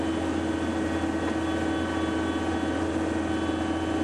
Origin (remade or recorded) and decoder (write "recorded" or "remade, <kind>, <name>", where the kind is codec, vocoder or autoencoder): recorded